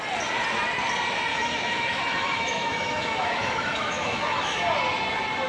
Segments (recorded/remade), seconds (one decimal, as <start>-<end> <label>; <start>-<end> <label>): 0.0-1.3 recorded; 1.3-4.6 remade; 4.6-5.5 recorded